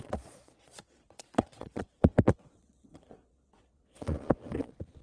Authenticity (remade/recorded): remade